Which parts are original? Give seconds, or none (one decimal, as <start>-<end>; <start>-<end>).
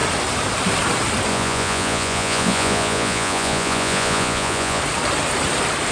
0.0-1.3; 4.8-5.9